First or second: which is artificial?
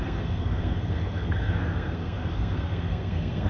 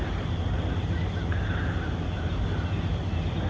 first